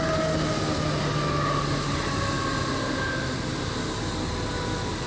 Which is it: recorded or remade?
recorded